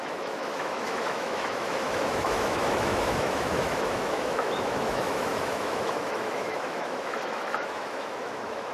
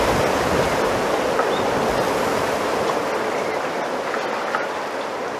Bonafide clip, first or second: second